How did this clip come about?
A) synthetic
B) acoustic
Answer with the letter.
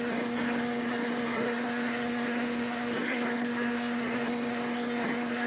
A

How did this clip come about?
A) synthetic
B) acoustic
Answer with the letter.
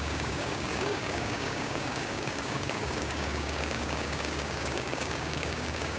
A